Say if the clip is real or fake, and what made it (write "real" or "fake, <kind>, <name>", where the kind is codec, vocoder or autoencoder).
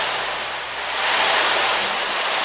real